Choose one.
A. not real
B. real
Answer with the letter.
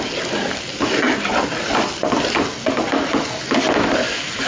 B